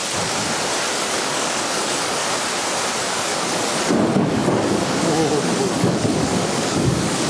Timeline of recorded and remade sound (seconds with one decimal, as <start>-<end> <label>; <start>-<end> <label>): 0.0-1.0 recorded; 1.0-2.2 remade; 2.2-3.0 recorded; 3.0-7.3 remade